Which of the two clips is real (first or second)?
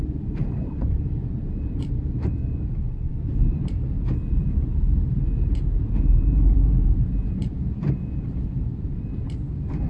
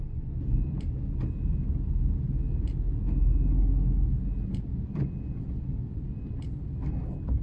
second